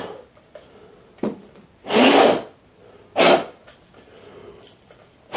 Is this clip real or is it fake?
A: real